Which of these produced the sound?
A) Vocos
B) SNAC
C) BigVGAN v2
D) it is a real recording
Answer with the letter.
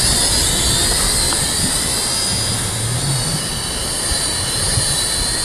D